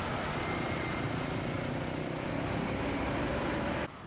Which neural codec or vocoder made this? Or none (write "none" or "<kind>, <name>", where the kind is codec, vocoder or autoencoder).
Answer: none